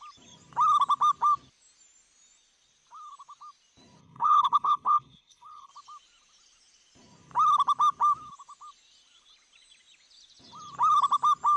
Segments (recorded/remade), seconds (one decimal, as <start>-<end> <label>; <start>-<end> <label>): 0.0-4.0 recorded; 4.0-5.7 remade; 5.7-11.6 recorded